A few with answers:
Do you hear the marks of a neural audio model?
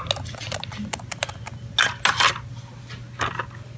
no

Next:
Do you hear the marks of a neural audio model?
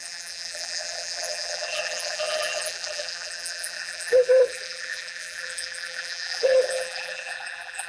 yes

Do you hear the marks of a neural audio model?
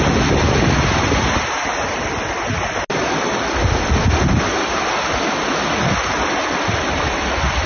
no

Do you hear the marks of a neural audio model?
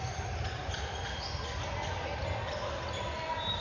no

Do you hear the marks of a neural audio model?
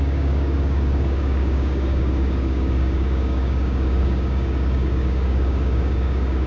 yes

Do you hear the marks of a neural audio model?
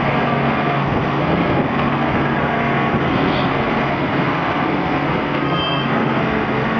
yes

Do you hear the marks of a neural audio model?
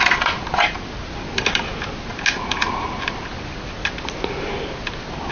no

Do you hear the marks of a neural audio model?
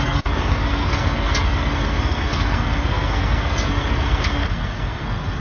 yes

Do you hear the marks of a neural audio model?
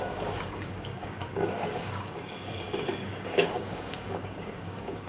yes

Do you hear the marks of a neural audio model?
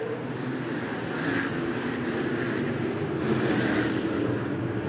no